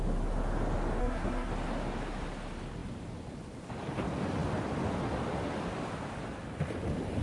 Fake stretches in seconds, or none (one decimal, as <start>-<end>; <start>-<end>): 1.0-1.5